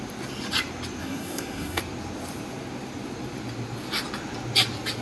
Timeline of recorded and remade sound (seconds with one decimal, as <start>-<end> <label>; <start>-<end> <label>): 0.0-1.0 recorded; 1.0-1.8 remade; 1.8-5.0 recorded